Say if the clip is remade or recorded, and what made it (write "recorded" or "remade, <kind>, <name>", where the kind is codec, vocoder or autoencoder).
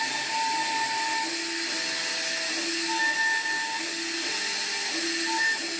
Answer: recorded